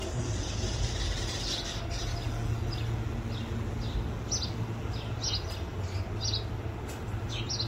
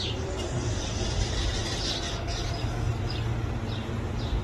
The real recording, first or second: first